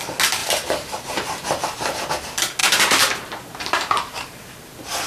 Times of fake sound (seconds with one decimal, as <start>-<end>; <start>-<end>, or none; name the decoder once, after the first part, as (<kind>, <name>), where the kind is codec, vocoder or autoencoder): 0.4-2.1 (vocoder, BigVGAN v2); 2.6-4.5